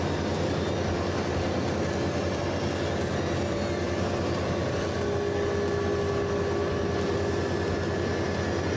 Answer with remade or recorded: recorded